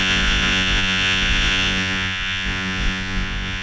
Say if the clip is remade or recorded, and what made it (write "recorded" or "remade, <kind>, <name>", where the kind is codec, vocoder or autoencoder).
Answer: remade, vocoder, Vocos